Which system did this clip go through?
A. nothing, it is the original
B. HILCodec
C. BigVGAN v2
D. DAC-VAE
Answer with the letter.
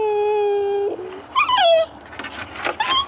A